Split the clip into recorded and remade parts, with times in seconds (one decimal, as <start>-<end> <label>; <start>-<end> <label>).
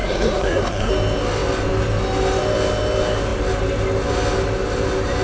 0.0-0.9 remade; 0.9-5.2 recorded